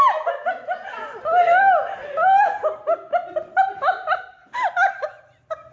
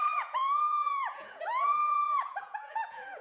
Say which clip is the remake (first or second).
second